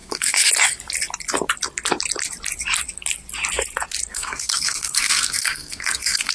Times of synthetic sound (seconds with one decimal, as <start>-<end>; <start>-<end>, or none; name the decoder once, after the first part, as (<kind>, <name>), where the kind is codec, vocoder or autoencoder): 0.0-0.5 (codec, SNAC); 4.1-6.3